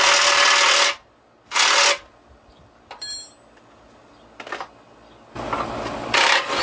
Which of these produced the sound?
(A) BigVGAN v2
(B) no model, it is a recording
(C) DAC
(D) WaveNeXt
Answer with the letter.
B